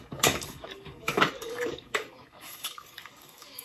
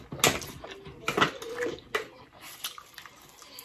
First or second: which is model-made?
first